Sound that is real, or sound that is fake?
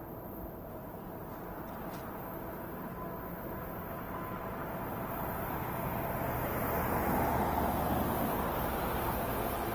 real